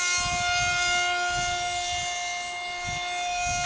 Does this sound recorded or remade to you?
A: recorded